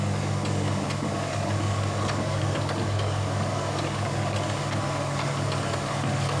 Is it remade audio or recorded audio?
remade